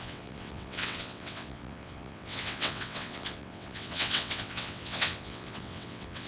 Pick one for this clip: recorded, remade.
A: remade